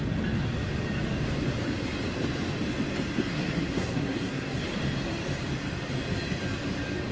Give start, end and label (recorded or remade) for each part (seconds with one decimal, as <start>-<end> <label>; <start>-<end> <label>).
0.0-3.2 recorded; 3.2-4.6 remade; 4.6-7.1 recorded